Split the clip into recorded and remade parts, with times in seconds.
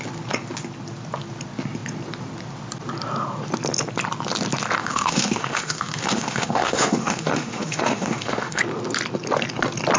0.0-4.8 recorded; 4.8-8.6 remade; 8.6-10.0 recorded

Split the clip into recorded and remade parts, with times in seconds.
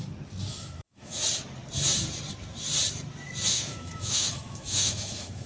0.0-0.5 recorded; 0.5-1.2 remade; 1.2-3.5 recorded; 3.5-5.5 remade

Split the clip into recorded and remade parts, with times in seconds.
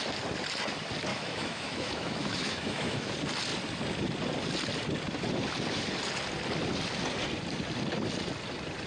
0.0-1.1 recorded; 1.1-3.1 remade; 3.1-8.9 recorded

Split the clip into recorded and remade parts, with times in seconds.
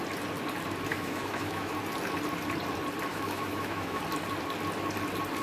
0.0-0.9 recorded; 0.9-1.7 remade; 1.7-3.1 recorded; 3.1-4.0 remade; 4.0-5.4 recorded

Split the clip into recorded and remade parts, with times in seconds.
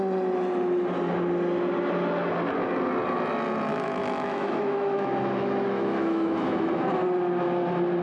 0.0-3.7 recorded; 3.7-7.0 remade; 7.0-8.0 recorded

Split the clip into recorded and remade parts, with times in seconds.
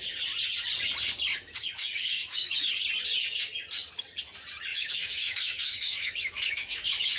0.0-1.3 recorded; 1.3-2.7 remade; 2.7-4.7 recorded; 4.7-7.2 remade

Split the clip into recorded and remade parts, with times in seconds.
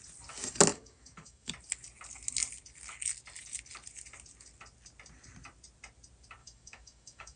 0.0-0.7 recorded; 0.7-1.5 remade; 1.5-6.4 recorded; 6.4-7.4 remade